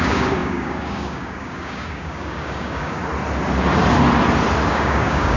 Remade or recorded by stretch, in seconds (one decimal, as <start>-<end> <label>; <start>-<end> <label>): 0.0-3.0 remade; 3.0-4.7 recorded; 4.7-5.4 remade